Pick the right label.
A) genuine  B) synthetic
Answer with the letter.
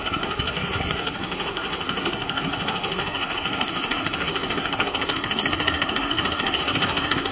B